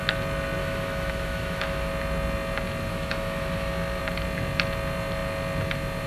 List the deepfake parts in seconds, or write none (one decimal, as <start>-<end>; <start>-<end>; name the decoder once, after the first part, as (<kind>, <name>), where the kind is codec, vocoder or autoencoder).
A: 0.6-1.9 (autoencoder, DAC-VAE); 2.9-4.0

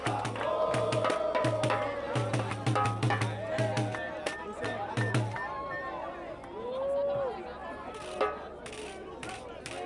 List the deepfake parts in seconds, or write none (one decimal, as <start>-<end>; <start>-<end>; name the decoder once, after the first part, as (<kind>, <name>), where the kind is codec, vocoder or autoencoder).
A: none